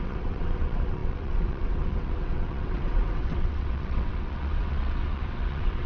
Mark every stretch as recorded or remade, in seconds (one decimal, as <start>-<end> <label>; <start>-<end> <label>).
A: 0.0-5.9 remade